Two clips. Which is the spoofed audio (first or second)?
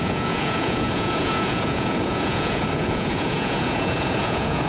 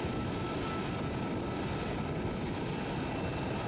first